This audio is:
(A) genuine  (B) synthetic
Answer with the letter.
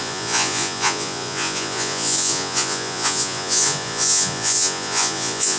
B